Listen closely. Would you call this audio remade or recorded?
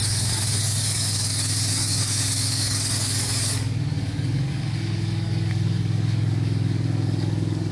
remade